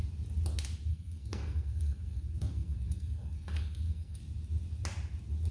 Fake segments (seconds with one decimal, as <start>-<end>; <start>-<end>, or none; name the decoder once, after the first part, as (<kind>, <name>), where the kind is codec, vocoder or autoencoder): 0.9-4.2 (codec, SNAC)